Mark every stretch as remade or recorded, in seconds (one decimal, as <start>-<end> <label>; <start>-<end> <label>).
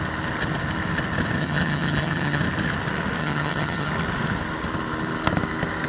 0.0-1.4 recorded; 1.4-2.4 remade; 2.4-3.2 recorded; 3.2-3.9 remade; 3.9-5.9 recorded